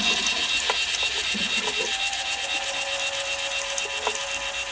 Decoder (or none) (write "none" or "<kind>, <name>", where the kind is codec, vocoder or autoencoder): none